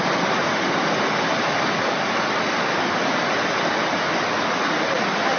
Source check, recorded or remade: recorded